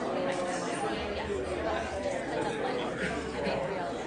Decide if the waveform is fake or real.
real